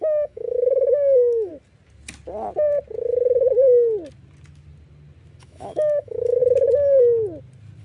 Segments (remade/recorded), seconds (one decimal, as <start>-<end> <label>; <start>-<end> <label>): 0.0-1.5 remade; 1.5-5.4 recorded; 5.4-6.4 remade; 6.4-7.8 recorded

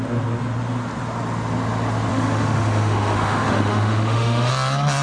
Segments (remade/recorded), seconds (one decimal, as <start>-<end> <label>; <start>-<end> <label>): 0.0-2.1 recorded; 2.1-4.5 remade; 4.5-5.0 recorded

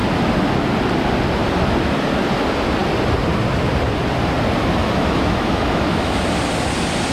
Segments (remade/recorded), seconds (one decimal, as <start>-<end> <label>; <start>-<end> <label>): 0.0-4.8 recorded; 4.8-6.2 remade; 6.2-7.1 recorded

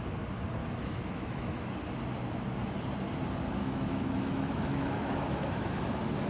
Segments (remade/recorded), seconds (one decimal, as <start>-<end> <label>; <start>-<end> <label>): 0.0-0.6 recorded; 0.6-1.6 remade; 1.6-3.6 recorded; 3.6-5.8 remade; 5.8-6.3 recorded